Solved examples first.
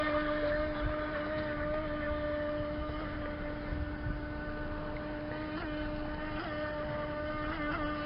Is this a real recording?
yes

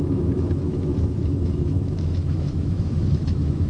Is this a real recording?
no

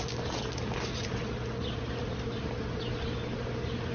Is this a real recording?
yes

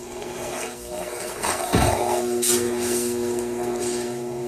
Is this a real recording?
no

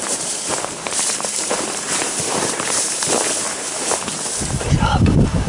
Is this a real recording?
no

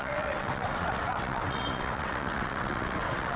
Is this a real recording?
no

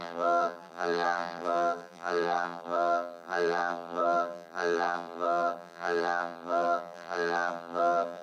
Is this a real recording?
no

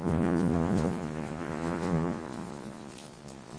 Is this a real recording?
no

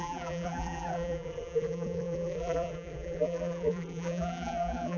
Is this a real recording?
no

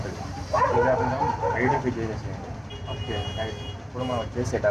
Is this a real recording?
yes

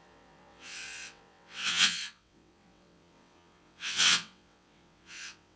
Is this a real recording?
no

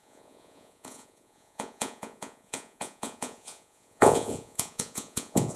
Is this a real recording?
no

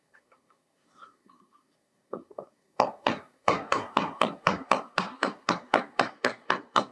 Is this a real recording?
no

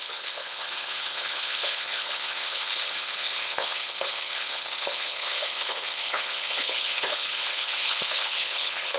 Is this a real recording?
no